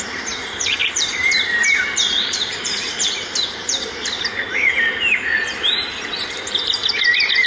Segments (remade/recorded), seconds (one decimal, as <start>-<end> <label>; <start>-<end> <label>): 0.0-7.5 remade